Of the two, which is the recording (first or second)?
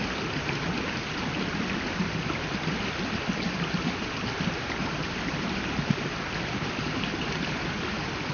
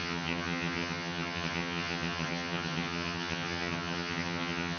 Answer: first